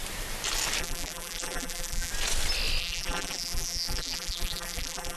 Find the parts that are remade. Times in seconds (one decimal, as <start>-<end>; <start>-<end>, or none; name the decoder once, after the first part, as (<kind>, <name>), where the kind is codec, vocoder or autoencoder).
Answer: 0.8-2.1 (vocoder, BigVGAN v2); 2.8-5.2